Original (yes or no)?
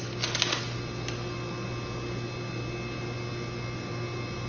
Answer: yes